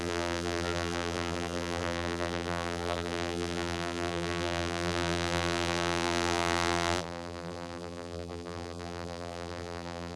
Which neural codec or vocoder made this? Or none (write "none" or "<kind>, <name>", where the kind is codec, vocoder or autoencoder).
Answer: vocoder, BigVGAN v2